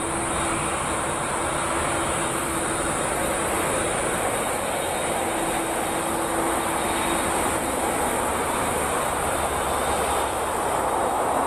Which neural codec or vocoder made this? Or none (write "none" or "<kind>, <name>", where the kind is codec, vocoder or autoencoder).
none